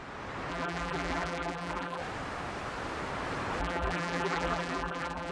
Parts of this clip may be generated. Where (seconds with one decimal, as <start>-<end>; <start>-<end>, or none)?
0.5-2.0; 3.6-5.3